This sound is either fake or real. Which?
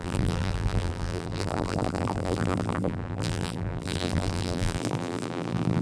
fake